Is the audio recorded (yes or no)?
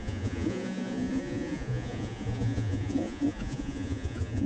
no